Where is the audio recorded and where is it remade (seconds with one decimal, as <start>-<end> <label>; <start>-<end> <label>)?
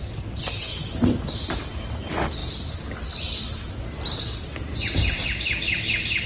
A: 0.0-6.3 recorded